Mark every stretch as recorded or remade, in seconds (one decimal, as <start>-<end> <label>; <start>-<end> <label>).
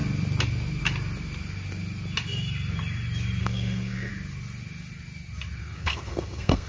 0.0-3.4 recorded; 3.4-4.1 remade; 4.1-5.6 recorded; 5.6-6.7 remade